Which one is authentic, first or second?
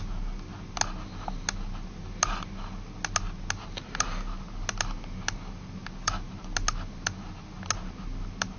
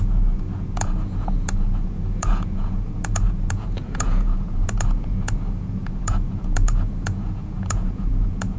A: first